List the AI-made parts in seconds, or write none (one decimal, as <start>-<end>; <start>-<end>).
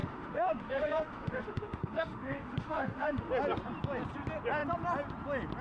0.0-3.3